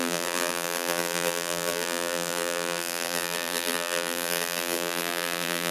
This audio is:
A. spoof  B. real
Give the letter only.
A